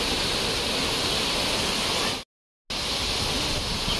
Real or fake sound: real